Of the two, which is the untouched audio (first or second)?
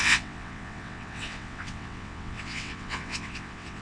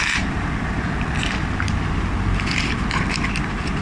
second